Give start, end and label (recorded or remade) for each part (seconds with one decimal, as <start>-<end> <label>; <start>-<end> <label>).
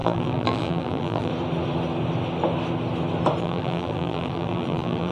0.0-1.3 remade; 1.3-3.4 recorded; 3.4-5.1 remade